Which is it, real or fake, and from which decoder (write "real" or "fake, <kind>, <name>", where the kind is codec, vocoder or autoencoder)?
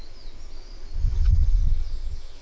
fake, vocoder, Vocos